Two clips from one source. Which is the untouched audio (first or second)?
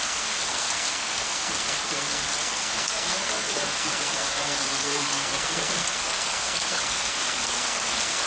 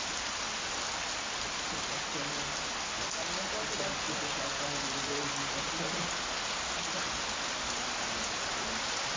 second